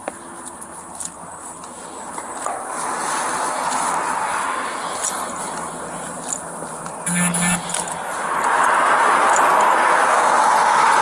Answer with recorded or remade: recorded